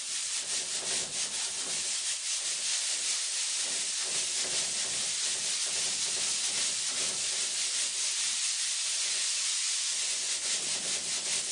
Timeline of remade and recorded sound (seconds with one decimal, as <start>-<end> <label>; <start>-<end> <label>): 0.0-8.8 recorded; 8.8-10.5 remade; 10.5-11.5 recorded